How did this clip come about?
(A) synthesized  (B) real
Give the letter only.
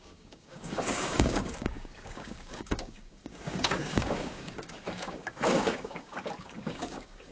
A